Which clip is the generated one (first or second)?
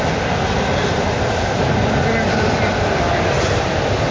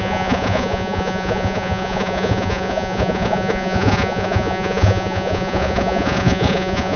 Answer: second